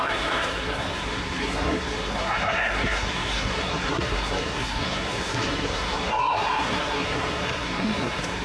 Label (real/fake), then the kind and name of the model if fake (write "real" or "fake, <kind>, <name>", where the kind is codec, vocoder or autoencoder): fake, codec, SNAC